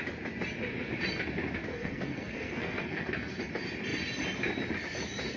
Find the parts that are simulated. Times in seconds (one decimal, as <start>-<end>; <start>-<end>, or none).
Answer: 1.7-3.4